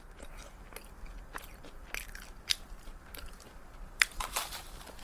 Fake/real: fake